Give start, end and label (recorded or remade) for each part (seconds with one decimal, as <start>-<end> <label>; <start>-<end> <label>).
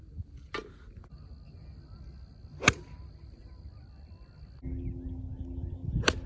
0.0-6.3 recorded